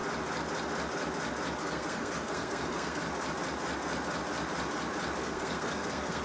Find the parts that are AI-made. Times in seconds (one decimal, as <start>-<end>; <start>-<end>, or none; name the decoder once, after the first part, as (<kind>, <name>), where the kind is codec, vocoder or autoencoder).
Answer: 1.6-3.0 (codec, SNAC); 5.2-6.2

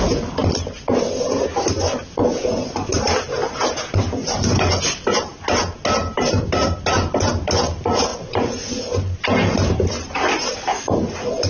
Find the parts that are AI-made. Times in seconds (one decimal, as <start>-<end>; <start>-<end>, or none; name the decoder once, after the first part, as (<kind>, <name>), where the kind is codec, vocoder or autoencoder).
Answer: 2.2-2.8 (vocoder, Vocos); 4.2-4.8; 8.1-8.8

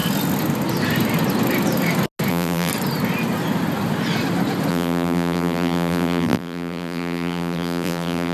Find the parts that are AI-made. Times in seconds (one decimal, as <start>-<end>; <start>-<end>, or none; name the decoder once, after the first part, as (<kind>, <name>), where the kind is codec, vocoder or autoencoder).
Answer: 2.3-2.7 (vocoder, BigVGAN v2); 4.7-8.3